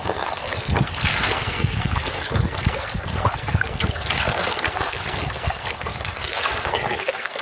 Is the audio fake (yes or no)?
yes